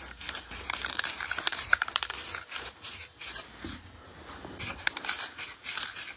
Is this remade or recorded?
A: remade